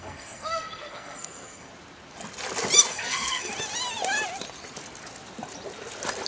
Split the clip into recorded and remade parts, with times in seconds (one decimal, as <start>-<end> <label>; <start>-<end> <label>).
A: 0.0-1.7 remade; 1.7-2.9 recorded; 2.9-3.5 remade; 3.5-6.3 recorded